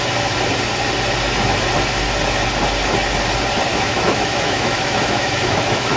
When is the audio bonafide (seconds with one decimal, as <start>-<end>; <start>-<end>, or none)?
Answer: 0.0-3.7